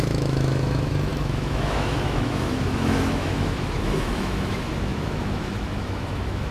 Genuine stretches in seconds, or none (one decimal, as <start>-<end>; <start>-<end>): none